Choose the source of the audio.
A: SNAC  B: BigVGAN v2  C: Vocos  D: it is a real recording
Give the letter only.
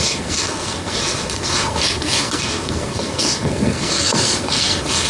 A